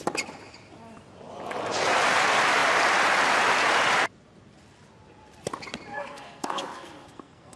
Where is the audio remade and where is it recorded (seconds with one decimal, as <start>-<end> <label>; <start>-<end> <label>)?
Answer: 0.0-5.9 recorded; 5.9-7.6 remade